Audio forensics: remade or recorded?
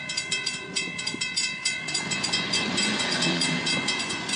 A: remade